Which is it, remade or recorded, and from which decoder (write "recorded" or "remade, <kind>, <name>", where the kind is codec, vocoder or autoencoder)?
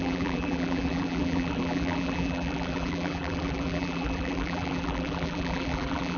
remade, vocoder, BigVGAN v2